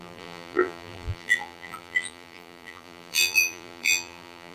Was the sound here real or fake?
fake